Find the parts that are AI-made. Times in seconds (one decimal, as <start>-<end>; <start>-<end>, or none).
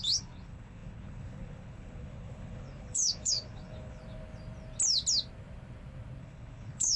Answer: 0.0-4.0; 6.2-7.0